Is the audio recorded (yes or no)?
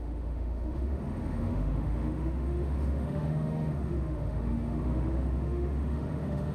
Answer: no